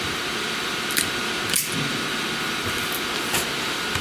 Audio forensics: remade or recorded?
recorded